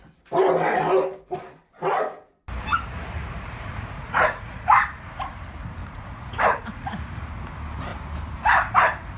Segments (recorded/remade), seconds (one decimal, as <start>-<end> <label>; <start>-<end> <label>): 0.0-2.7 recorded; 2.7-4.8 remade; 4.8-5.8 recorded; 5.8-7.3 remade; 7.3-9.2 recorded